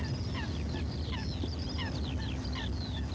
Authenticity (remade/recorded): recorded